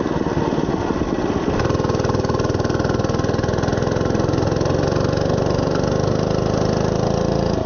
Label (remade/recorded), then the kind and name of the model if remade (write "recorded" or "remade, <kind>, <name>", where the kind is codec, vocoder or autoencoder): recorded